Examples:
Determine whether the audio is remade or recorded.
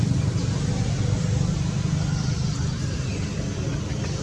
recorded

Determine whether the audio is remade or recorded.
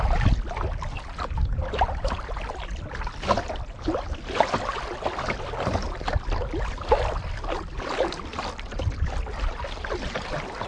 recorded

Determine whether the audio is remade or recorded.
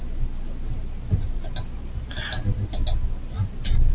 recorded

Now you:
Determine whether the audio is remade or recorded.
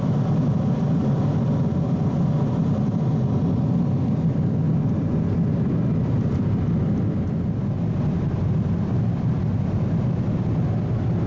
recorded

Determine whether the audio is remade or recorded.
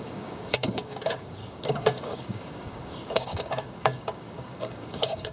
remade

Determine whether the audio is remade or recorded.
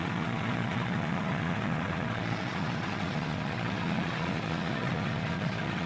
remade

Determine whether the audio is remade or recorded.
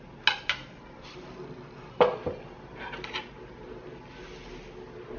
recorded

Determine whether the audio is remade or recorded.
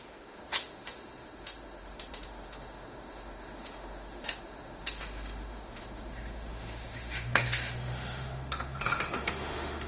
remade